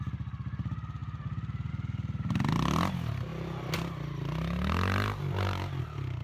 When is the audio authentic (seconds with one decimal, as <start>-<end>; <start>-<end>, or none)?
0.0-6.2